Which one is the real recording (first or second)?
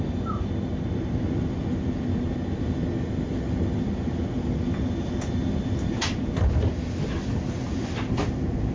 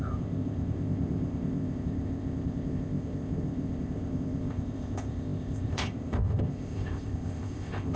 first